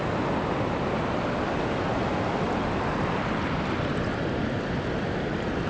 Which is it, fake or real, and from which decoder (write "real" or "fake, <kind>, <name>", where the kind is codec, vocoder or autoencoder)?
real